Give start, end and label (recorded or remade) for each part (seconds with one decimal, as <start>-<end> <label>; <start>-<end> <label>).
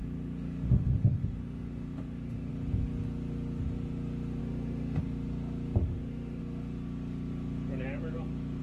0.0-2.5 remade; 2.5-4.4 recorded; 4.4-5.0 remade; 5.0-5.8 recorded; 5.8-6.4 remade; 6.4-8.6 recorded